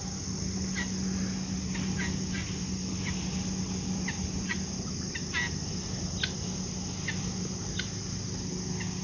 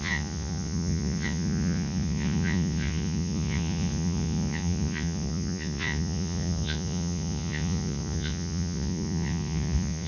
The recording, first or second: first